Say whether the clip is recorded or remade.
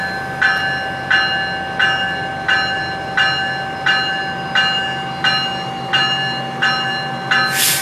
recorded